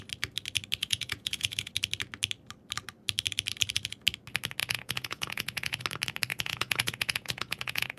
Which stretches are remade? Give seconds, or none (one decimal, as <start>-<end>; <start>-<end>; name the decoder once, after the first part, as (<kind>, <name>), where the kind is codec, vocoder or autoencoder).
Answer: 0.8-1.7 (vocoder, Vocos); 4.6-5.8; 6.3-8.0